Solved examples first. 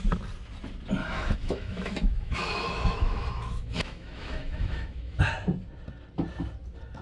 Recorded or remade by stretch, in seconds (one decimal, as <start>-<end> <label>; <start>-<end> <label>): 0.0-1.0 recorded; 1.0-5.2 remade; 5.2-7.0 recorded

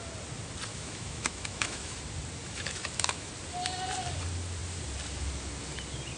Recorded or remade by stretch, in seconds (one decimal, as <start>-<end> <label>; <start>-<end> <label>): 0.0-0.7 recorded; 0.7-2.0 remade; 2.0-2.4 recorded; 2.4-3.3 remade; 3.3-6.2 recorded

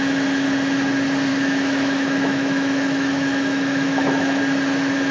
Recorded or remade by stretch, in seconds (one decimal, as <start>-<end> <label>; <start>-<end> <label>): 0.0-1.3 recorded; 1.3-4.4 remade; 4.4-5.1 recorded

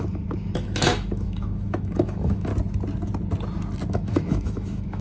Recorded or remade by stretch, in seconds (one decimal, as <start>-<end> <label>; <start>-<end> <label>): 0.0-2.5 remade; 2.5-3.9 recorded; 3.9-5.0 remade

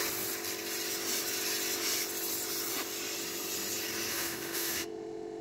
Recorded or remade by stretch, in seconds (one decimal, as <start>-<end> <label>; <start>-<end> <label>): 0.0-4.1 recorded; 4.1-5.4 remade